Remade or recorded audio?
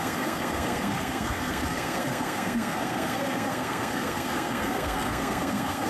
remade